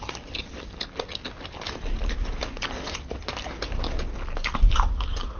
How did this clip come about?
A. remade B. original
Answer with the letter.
B